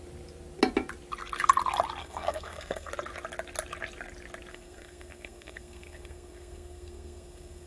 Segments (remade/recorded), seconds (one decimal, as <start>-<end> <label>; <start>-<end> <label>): 0.0-2.0 recorded; 2.0-2.9 remade; 2.9-4.5 recorded; 4.5-7.7 remade